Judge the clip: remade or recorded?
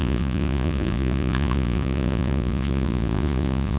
remade